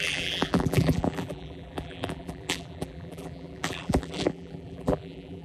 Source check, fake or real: fake